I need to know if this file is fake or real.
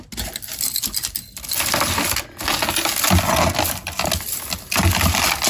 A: real